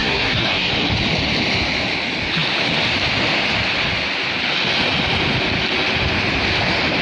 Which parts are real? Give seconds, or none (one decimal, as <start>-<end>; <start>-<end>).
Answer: 0.7-7.0